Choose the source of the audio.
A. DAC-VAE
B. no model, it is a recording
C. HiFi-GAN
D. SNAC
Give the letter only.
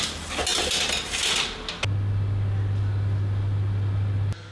B